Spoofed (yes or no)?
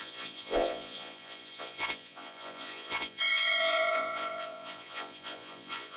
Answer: yes